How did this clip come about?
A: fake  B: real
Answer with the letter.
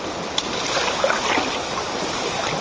B